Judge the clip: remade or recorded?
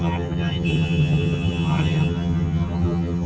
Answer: remade